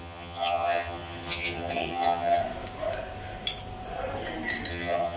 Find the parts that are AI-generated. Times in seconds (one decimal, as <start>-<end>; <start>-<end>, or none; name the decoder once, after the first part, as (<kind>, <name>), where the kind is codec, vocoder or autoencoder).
0.0-2.4 (vocoder, HiFi-GAN); 4.7-5.2